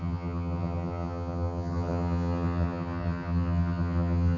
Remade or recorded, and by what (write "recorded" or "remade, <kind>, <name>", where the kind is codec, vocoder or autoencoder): remade, vocoder, HiFi-GAN